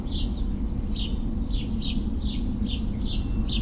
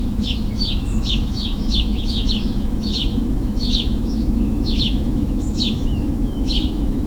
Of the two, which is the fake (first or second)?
second